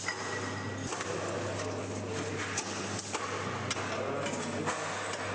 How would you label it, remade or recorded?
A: recorded